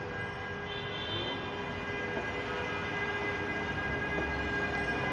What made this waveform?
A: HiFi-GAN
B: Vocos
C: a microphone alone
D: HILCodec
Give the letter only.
C